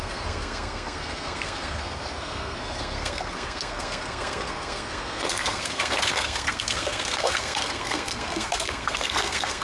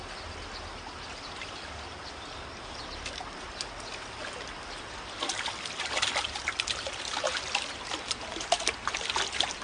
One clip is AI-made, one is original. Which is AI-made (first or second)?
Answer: first